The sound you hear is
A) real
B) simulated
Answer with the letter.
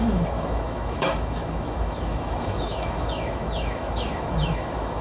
B